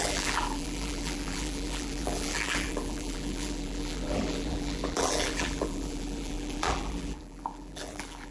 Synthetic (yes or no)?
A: yes